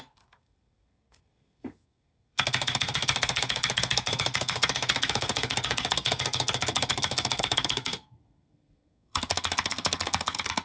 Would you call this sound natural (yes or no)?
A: no